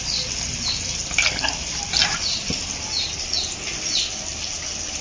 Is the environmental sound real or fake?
real